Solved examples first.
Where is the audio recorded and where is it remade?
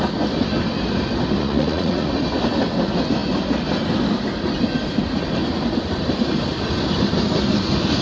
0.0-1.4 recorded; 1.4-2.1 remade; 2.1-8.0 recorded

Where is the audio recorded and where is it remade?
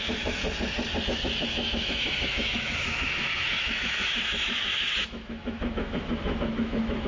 0.0-0.4 remade; 0.4-1.0 recorded; 1.0-7.1 remade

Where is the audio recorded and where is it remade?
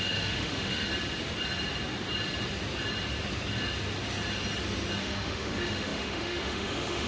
0.0-0.9 remade; 0.9-5.0 recorded; 5.0-7.1 remade